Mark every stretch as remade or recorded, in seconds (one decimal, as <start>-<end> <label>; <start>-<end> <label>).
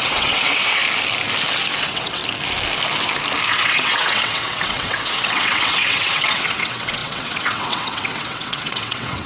0.0-0.8 remade; 0.8-1.8 recorded; 1.8-2.2 remade; 2.2-3.5 recorded; 3.5-9.3 remade